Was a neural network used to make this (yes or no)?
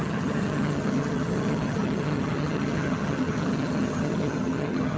yes